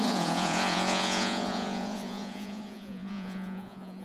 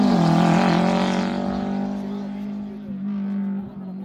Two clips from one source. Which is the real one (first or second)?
second